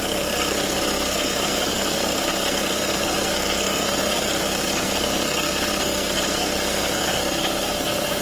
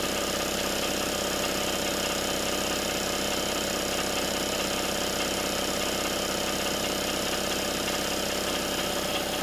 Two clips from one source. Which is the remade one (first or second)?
first